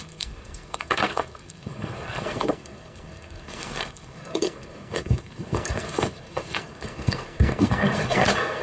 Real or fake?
fake